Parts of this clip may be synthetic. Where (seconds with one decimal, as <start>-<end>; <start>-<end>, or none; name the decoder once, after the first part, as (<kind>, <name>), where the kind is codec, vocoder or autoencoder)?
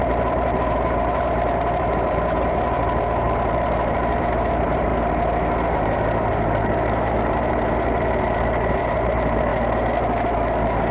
0.0-4.9 (vocoder, BigVGAN v2); 5.7-9.5